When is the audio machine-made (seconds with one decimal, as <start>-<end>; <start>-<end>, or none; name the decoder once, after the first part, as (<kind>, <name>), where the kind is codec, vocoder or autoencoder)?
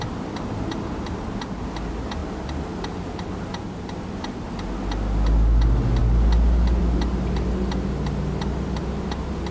none